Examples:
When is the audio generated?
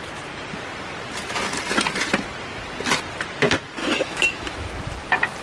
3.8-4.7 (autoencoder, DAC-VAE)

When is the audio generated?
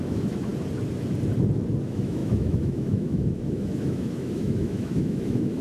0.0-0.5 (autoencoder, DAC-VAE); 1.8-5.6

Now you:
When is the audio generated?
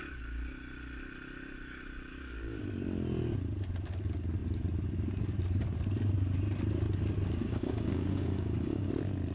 2.1-2.6 (codec, DAC); 7.4-8.9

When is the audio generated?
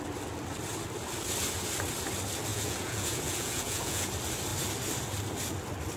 2.5-4.1 (vocoder, Vocos)